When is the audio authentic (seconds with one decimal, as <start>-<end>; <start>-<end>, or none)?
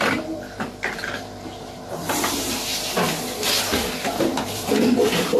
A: 2.7-4.1